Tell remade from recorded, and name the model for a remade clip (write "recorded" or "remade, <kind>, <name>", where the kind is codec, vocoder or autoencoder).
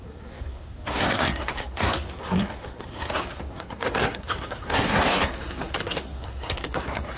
remade, codec, SNAC